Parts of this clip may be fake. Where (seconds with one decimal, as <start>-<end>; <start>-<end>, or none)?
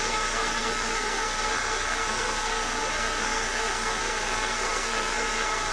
0.0-5.7